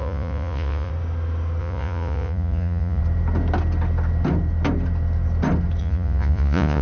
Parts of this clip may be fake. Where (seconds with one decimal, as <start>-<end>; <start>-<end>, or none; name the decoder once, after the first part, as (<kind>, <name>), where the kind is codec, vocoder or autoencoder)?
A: 0.0-0.9 (vocoder, Vocos); 1.6-3.0; 5.8-6.8